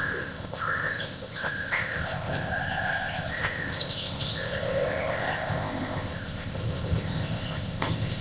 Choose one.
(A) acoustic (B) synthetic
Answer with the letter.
B